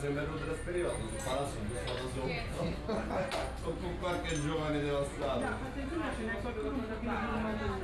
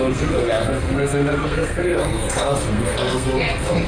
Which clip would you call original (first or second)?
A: first